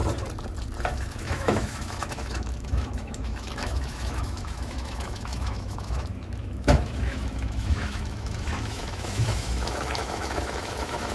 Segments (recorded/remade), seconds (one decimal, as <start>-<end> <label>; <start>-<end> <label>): 0.0-0.8 recorded; 0.8-11.1 remade